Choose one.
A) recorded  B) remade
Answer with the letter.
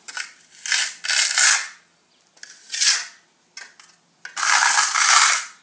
A